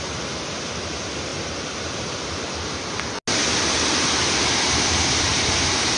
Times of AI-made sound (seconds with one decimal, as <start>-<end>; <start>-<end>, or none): 5.3-6.0